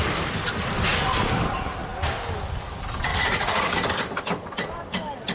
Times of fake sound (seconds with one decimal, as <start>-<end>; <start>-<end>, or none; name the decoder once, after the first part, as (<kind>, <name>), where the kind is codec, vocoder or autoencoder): 3.1-3.7 (vocoder, Vocos)